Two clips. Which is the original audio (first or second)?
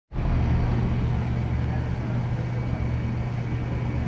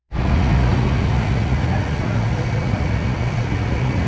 first